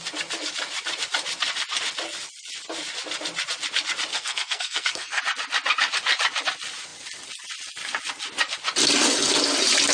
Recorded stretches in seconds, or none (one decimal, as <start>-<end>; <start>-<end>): 0.0-4.1; 5.2-9.9